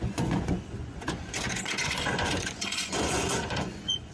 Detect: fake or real fake